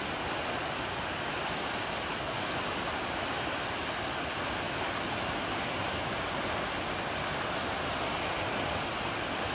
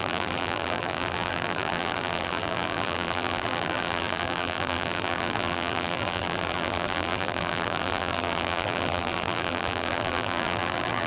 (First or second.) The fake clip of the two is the second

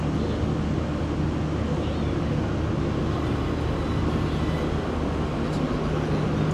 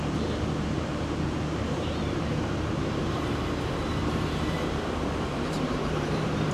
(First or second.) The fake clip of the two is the second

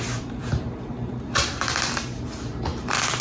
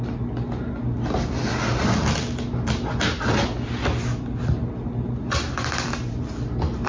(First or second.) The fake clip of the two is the first